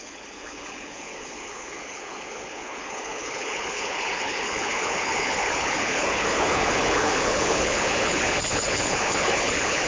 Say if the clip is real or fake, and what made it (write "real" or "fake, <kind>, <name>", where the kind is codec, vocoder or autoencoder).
fake, codec, HILCodec